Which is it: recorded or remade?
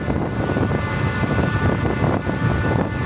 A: recorded